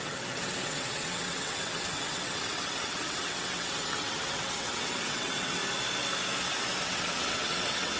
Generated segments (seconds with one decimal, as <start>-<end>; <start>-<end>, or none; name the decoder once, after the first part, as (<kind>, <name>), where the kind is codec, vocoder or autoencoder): 0.0-5.6 (vocoder, WaveNeXt); 6.8-8.0